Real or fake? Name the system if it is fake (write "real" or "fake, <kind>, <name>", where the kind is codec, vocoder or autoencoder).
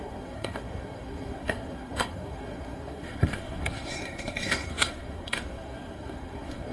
fake, codec, SNAC